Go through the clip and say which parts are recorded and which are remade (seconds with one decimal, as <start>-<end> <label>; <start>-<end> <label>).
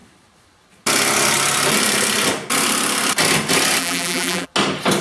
0.0-3.8 recorded; 3.8-4.5 remade; 4.5-5.0 recorded